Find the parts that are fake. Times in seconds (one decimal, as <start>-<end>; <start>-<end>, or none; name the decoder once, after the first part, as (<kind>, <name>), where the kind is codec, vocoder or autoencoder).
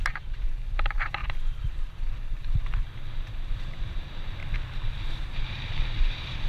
0.0-4.4 (vocoder, BigVGAN v2); 5.0-6.5